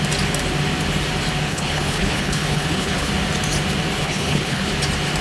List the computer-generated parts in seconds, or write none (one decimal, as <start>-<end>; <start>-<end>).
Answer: 1.5-3.1; 4.0-4.7

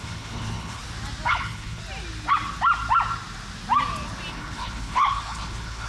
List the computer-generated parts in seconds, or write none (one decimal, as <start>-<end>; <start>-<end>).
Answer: 0.0-0.8; 1.3-1.8; 4.3-5.9

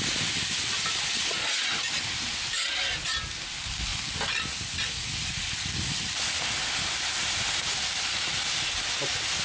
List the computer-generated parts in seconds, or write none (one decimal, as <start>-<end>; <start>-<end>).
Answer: none

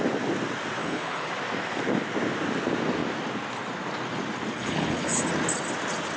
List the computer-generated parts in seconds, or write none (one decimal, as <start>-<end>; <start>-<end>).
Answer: 0.8-1.3; 4.5-5.2

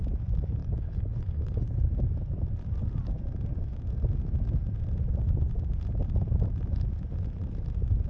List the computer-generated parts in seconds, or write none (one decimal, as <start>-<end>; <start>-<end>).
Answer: 0.6-1.9

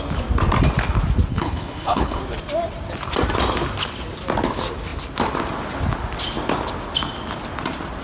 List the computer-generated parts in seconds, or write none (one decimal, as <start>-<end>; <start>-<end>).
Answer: 1.3-2.2

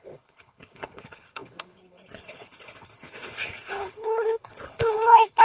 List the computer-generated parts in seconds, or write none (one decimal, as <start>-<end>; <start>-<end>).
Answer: 0.0-5.4